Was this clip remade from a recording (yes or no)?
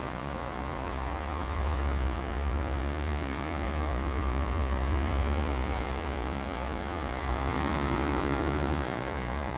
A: yes